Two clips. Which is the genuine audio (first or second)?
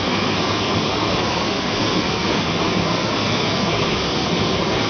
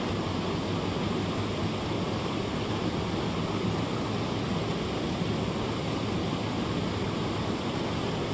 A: second